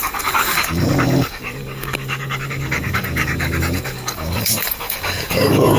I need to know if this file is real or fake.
fake